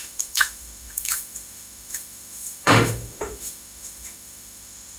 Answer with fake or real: fake